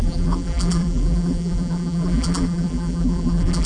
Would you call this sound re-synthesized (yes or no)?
yes